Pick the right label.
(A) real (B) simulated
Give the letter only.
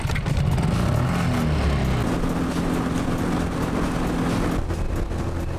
A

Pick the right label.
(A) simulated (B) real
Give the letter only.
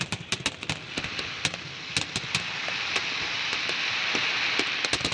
B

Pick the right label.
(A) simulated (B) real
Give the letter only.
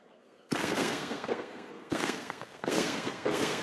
A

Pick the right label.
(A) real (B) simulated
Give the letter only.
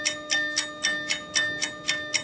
A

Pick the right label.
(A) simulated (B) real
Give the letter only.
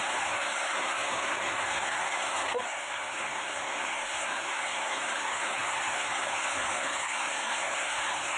A